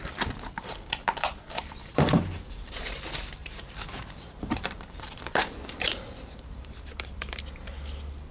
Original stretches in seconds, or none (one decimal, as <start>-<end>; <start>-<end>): 0.0-1.8; 3.0-3.4; 7.4-8.3